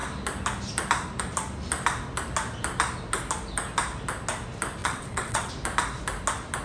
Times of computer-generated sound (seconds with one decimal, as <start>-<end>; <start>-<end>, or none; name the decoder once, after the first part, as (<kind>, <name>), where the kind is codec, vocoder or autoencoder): 4.8-5.5 (vocoder, WaveNeXt)